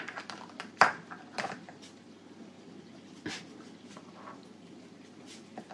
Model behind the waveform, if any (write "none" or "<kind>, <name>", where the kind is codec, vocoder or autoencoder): none